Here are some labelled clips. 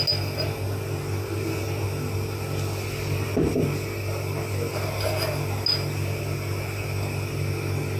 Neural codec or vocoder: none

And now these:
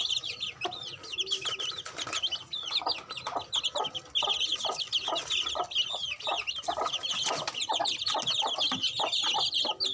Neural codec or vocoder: none